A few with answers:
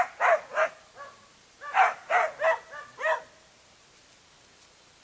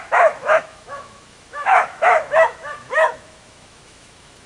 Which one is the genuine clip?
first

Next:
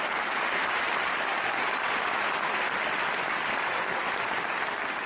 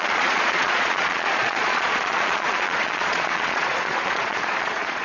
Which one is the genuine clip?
first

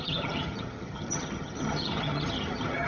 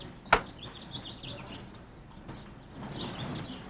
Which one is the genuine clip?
second